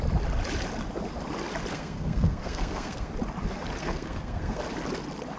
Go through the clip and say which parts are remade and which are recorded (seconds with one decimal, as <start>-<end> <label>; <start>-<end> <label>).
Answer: 0.0-1.7 recorded; 1.7-3.1 remade; 3.1-3.8 recorded; 3.8-4.6 remade; 4.6-5.4 recorded